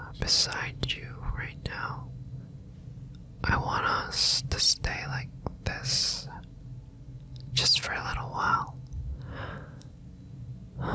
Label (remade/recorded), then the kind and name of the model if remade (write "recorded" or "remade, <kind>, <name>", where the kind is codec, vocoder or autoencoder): recorded